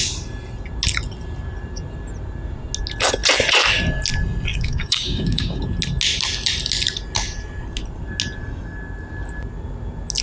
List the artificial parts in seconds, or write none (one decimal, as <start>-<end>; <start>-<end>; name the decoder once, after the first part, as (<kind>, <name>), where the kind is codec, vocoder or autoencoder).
4.5-5.6 (codec, DAC)